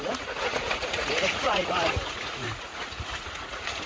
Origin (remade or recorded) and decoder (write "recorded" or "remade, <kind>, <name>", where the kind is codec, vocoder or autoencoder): remade, vocoder, Vocos